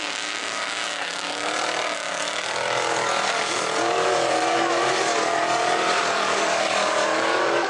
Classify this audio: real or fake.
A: fake